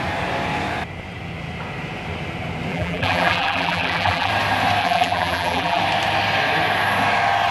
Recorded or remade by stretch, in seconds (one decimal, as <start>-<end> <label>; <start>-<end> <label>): 0.0-2.7 recorded; 2.7-4.3 remade; 4.3-4.8 recorded; 4.8-5.8 remade; 5.8-7.5 recorded